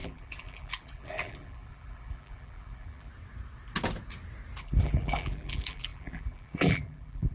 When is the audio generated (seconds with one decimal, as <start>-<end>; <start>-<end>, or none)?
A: 0.0-3.1; 4.6-7.3